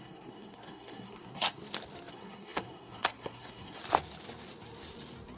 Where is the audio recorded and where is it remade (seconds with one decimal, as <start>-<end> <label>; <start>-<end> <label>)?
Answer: 0.0-1.6 remade; 1.6-2.1 recorded; 2.1-3.8 remade; 3.8-5.4 recorded